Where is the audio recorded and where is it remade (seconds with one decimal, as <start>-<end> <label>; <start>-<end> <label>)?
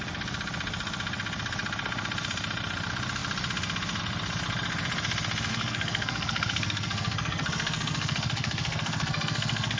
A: 0.0-5.5 recorded; 5.5-9.8 remade